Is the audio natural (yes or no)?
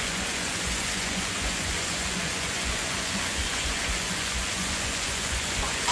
no